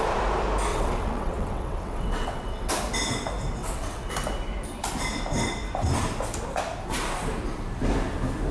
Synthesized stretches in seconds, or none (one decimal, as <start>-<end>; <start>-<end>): 0.7-2.7; 3.6-4.1

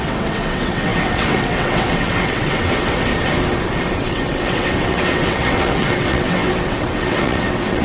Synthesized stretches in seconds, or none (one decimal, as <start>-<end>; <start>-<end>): 0.0-3.1; 3.9-7.8

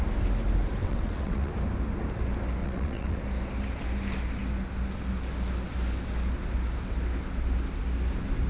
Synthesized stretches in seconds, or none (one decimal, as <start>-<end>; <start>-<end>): 0.8-1.5; 2.6-3.2